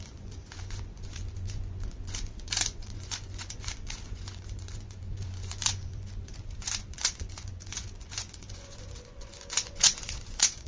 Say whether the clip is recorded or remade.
remade